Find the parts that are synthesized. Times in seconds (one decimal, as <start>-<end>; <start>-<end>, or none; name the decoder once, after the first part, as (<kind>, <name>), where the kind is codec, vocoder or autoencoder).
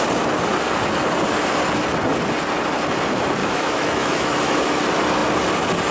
3.4-4.7 (autoencoder, DAC-VAE)